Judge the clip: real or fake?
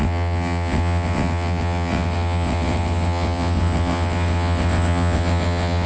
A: fake